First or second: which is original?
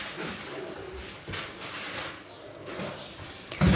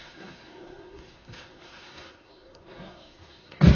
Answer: first